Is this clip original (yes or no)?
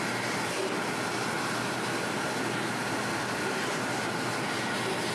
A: yes